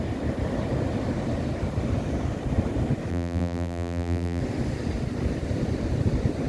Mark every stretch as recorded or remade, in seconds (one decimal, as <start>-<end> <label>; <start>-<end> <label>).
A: 0.0-3.1 recorded; 3.1-4.4 remade; 4.4-6.5 recorded